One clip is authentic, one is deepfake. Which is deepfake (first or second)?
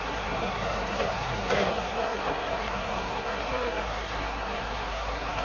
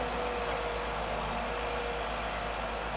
first